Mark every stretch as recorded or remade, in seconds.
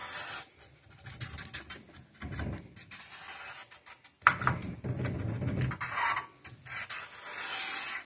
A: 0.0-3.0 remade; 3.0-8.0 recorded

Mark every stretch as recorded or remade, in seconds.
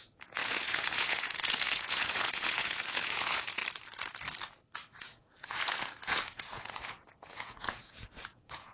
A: 0.0-3.6 remade; 3.6-5.0 recorded; 5.0-8.7 remade